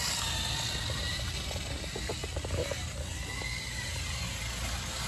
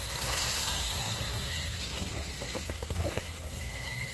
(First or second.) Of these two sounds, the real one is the first